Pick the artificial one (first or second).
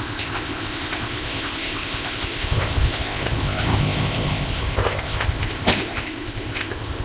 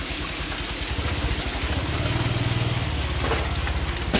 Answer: first